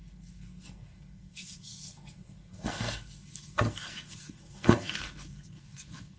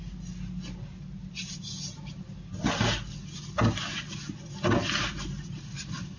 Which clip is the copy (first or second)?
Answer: first